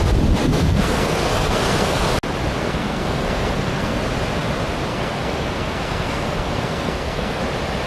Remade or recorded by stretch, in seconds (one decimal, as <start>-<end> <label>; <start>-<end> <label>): 0.0-0.4 recorded; 0.4-2.1 remade; 2.1-2.6 recorded; 2.6-4.0 remade; 4.0-4.9 recorded; 4.9-7.4 remade; 7.4-7.9 recorded

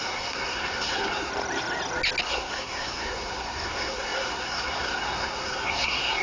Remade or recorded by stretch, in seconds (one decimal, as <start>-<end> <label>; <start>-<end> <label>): 0.0-1.3 remade; 1.3-2.2 recorded; 2.2-6.2 remade

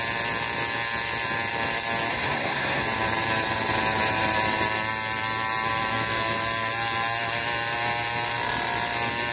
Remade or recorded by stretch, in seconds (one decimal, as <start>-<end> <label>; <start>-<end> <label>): 0.0-2.1 recorded; 2.1-2.8 remade; 2.8-9.3 recorded

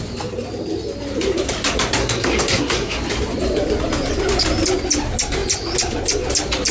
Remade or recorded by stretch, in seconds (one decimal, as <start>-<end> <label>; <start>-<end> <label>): 0.0-2.0 recorded; 2.0-3.0 remade; 3.0-6.7 recorded

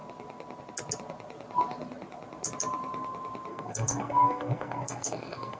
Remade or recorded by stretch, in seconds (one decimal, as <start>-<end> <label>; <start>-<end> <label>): 0.0-3.5 recorded; 3.5-5.6 remade

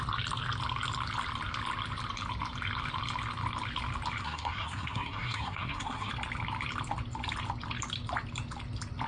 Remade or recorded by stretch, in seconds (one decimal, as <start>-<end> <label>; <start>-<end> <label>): 0.0-4.2 recorded; 4.2-6.1 remade; 6.1-9.1 recorded